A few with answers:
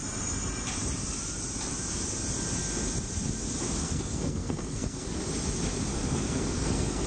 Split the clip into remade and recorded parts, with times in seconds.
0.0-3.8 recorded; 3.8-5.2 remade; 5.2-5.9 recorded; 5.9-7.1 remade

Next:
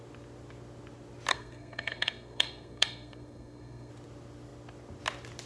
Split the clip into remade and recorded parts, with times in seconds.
0.0-1.3 recorded; 1.3-3.9 remade; 3.9-5.5 recorded

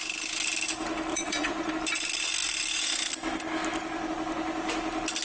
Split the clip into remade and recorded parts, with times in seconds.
0.0-1.1 recorded; 1.1-1.7 remade; 1.7-5.2 recorded

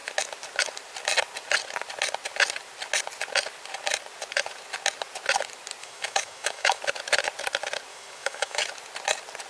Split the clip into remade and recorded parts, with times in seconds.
0.0-5.8 recorded; 5.8-6.8 remade; 6.8-7.9 recorded; 7.9-8.6 remade; 8.6-9.5 recorded